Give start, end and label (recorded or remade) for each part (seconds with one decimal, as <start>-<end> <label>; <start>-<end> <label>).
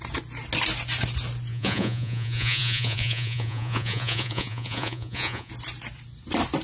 0.0-1.5 recorded; 1.5-5.5 remade; 5.5-6.6 recorded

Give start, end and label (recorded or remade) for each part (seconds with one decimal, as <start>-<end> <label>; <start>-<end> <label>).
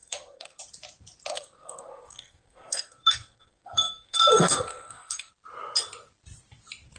0.0-0.6 remade; 0.6-1.3 recorded; 1.3-5.3 remade; 5.3-7.0 recorded